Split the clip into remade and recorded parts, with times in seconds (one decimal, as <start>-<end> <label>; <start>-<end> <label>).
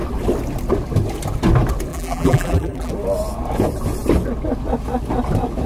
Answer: 0.0-1.9 recorded; 1.9-2.9 remade; 2.9-5.7 recorded